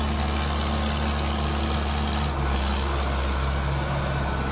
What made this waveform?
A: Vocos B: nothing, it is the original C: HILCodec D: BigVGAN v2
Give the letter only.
B